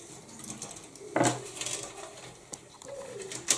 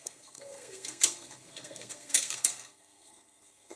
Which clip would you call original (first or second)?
first